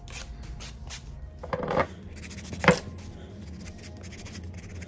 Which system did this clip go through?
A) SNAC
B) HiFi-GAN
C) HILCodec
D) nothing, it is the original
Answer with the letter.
D